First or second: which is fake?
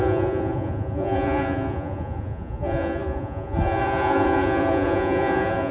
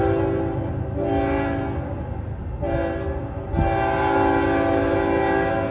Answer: first